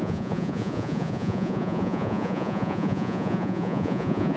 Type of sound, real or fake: fake